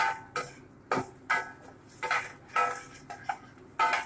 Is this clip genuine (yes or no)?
yes